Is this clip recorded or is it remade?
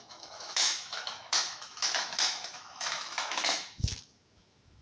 remade